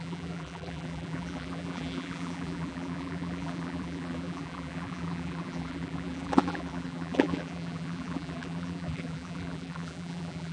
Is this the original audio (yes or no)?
no